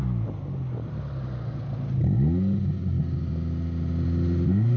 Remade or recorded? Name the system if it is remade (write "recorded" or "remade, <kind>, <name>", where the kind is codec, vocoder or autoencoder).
recorded